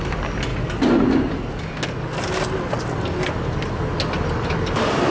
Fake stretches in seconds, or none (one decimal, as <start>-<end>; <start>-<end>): none